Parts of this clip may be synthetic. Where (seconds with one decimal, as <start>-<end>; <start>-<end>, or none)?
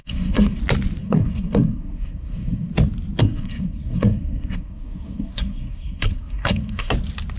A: 0.0-0.6; 1.0-2.7; 3.2-6.9